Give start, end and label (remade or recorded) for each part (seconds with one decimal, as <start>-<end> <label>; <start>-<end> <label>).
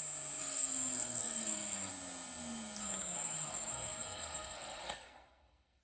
0.0-0.4 recorded; 0.4-1.9 remade; 1.9-2.8 recorded; 2.8-5.8 remade